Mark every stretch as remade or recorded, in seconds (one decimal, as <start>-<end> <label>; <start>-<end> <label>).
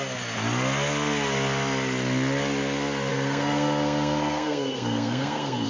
0.0-3.1 recorded; 3.1-5.7 remade